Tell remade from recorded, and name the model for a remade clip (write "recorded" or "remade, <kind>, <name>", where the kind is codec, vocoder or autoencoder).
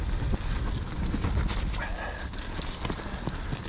recorded